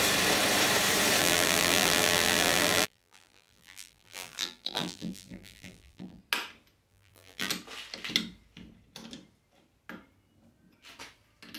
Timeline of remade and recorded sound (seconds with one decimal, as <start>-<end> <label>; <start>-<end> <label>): 0.0-1.2 recorded; 1.2-6.2 remade; 6.2-6.9 recorded; 6.9-7.5 remade; 7.5-11.6 recorded